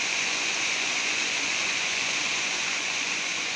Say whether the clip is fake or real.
fake